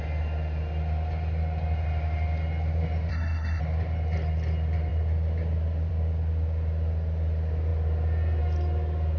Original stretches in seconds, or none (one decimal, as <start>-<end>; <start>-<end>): 0.0-3.1; 3.6-9.2